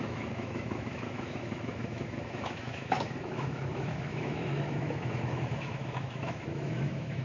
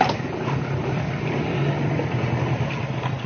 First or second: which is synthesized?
first